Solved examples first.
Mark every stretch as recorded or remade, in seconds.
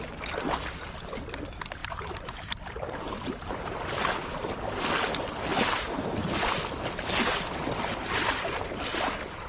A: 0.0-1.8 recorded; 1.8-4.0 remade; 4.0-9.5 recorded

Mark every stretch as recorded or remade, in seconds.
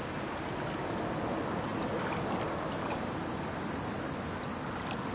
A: 0.0-5.1 recorded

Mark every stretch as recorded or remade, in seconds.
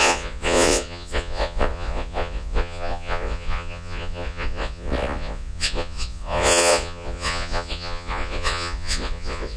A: 0.0-9.6 remade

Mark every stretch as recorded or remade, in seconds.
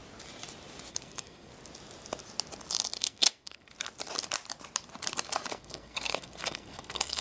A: 0.0-0.9 recorded; 0.9-1.5 remade; 1.5-3.0 recorded; 3.0-3.7 remade; 3.7-5.5 recorded; 5.5-7.2 remade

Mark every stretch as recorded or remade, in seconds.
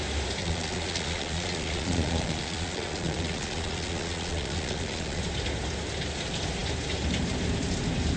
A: 0.0-0.4 recorded; 0.4-5.2 remade; 5.2-8.2 recorded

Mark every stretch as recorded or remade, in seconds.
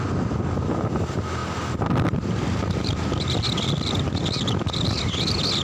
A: 0.0-5.6 recorded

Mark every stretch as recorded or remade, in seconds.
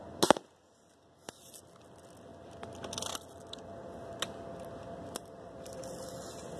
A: 0.0-5.2 recorded; 5.2-5.8 remade; 5.8-6.6 recorded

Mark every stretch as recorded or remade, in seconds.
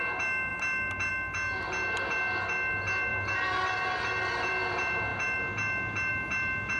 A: 0.0-3.1 recorded; 3.1-4.5 remade; 4.5-6.8 recorded